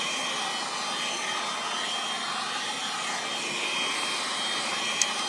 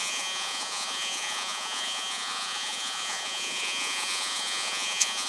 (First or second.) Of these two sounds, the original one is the first